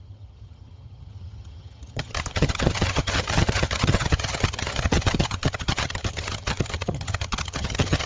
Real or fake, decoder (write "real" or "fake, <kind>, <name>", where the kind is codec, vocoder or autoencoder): fake, vocoder, HiFi-GAN